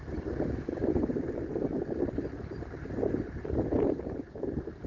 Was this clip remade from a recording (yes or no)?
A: no